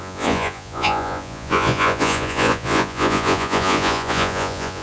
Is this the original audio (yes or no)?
no